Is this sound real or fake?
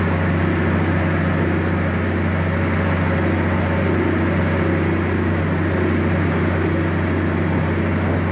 real